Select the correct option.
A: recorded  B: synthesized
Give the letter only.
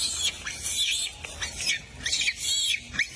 A